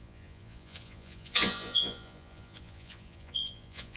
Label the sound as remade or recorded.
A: remade